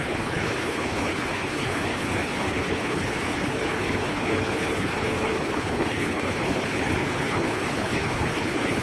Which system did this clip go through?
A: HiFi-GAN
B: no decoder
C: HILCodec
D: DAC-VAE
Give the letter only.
C